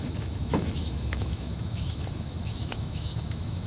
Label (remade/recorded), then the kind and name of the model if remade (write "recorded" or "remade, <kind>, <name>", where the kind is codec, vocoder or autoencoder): remade, autoencoder, DAC-VAE